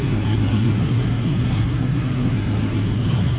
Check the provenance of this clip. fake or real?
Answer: fake